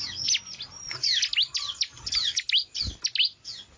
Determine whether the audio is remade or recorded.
recorded